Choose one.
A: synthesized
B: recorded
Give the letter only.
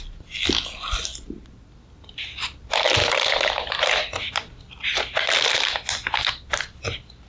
B